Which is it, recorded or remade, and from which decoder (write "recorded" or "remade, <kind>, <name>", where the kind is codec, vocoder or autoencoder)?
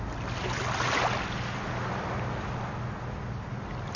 recorded